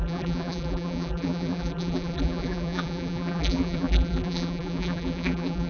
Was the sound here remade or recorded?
remade